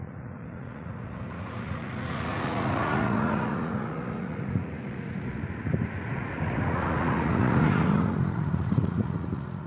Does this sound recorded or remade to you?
remade